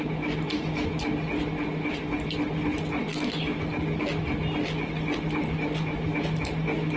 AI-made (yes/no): no